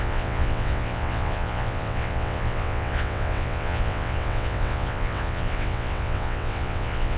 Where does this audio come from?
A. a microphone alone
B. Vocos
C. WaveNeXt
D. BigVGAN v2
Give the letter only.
C